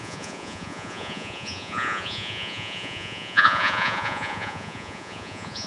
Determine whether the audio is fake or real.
fake